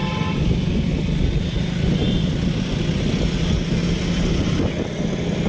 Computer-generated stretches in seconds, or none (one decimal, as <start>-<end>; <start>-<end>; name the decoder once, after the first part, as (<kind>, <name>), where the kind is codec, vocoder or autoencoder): none